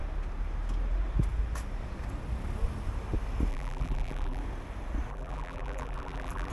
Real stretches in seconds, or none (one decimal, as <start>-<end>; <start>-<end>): 0.0-3.5; 4.4-5.1